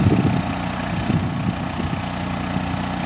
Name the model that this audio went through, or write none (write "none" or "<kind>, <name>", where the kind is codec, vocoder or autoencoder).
none